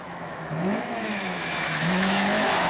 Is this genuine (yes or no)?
no